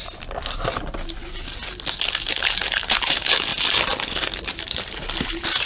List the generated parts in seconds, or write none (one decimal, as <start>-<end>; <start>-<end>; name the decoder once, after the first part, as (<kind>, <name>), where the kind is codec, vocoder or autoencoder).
2.2-3.5 (vocoder, BigVGAN v2); 4.7-5.7